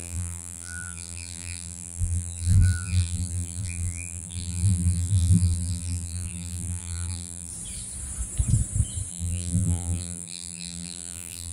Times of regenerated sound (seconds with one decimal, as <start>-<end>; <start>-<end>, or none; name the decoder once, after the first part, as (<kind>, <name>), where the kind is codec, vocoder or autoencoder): 0.0-7.5 (vocoder, BigVGAN v2); 9.1-11.5